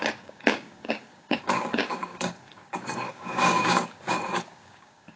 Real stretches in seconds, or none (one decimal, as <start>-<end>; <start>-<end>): none